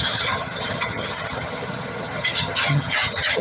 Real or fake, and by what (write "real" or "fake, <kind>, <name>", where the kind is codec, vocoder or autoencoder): fake, vocoder, HiFi-GAN